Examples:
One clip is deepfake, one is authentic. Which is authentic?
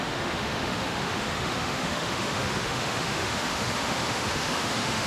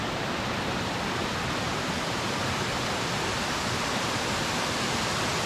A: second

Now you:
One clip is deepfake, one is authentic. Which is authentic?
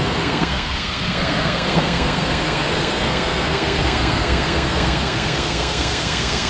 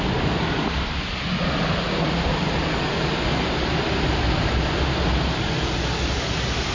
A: second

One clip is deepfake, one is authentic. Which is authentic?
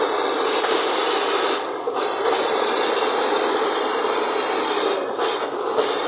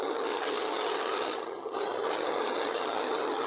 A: first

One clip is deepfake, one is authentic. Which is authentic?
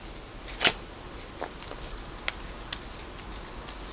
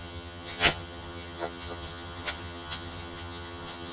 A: first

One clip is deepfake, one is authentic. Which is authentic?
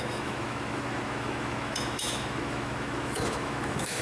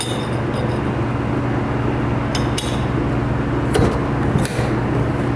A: second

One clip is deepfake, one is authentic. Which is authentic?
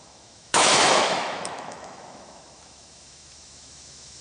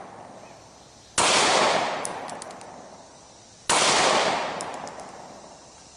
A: second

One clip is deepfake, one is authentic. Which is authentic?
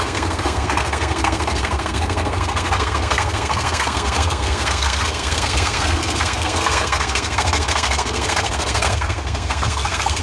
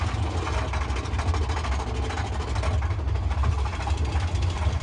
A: second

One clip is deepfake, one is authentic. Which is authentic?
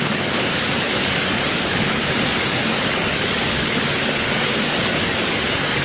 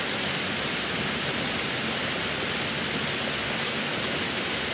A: second